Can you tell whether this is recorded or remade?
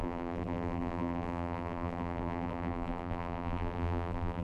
remade